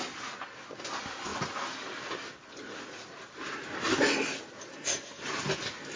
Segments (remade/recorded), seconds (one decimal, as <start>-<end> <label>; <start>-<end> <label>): 0.0-6.0 recorded